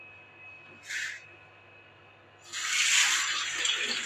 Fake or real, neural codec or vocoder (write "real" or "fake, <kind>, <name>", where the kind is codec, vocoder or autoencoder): real